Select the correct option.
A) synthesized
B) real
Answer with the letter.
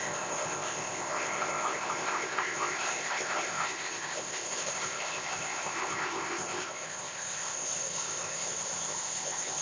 A